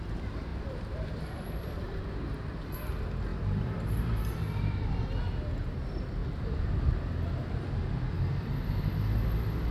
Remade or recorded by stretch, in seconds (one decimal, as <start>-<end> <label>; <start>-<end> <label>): 0.0-0.5 recorded; 0.5-2.5 remade; 2.5-3.3 recorded; 3.3-5.0 remade; 5.0-9.7 recorded